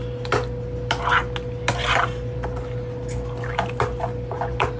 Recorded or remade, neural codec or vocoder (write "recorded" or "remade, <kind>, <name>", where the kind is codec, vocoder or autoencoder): recorded